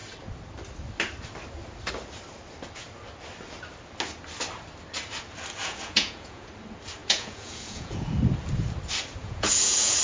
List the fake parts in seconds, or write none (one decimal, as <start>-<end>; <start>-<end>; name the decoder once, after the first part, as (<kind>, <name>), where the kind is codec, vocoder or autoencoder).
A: 5.6-6.5 (vocoder, Vocos); 7.0-8.2; 9.2-10.0